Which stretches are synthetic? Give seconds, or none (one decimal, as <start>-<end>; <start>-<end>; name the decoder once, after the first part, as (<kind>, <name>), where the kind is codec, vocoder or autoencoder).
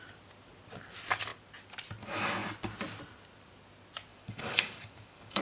4.1-5.4 (codec, DAC)